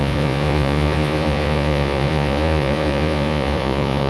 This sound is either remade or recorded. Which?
remade